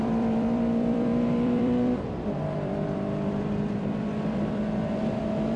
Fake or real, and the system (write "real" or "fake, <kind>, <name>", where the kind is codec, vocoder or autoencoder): fake, vocoder, BigVGAN v2